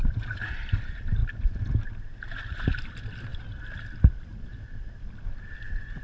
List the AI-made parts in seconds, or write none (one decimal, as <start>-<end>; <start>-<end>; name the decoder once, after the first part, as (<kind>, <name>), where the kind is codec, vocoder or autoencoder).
none